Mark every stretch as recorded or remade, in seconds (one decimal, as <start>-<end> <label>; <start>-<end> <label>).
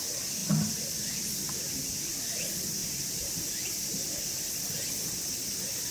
0.0-2.8 recorded; 2.8-3.3 remade; 3.3-5.9 recorded